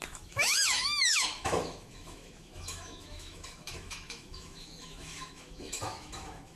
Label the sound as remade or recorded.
remade